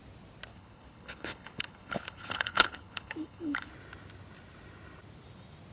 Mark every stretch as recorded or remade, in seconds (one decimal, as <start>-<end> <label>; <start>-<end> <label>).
0.0-0.5 recorded; 0.5-3.7 remade; 3.7-5.7 recorded